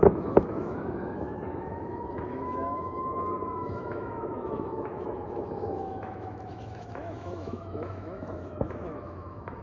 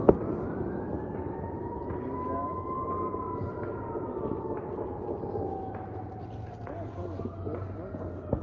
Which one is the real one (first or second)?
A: second